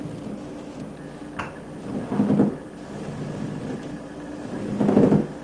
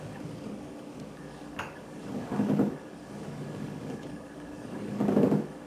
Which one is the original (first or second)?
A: first